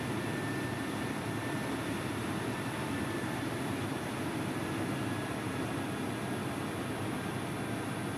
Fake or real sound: real